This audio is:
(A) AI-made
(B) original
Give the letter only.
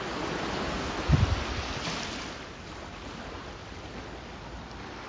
B